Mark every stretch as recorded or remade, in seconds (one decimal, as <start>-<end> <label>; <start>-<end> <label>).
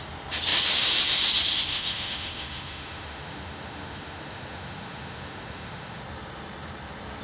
0.0-1.7 recorded; 1.7-6.0 remade; 6.0-7.2 recorded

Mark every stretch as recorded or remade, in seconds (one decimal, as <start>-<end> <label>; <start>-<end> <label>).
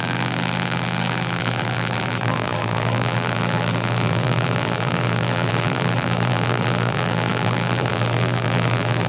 0.0-9.1 remade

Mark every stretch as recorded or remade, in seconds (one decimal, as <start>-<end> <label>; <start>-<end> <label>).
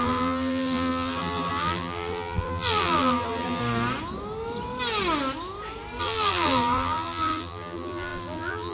0.0-3.6 remade; 3.6-6.0 recorded; 6.0-8.7 remade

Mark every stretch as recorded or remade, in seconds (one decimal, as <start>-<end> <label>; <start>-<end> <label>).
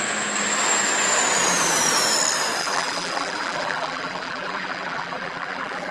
0.0-2.6 recorded; 2.6-5.9 remade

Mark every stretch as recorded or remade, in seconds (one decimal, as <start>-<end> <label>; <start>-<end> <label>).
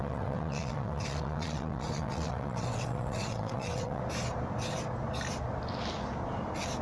0.0-4.0 remade; 4.0-6.8 recorded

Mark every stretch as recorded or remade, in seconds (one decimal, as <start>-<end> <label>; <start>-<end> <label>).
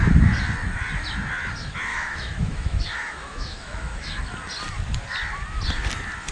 0.0-1.9 recorded; 1.9-4.2 remade; 4.2-6.3 recorded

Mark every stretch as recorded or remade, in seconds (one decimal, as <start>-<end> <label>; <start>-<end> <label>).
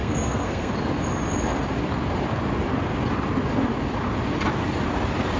0.0-0.7 remade; 0.7-5.4 recorded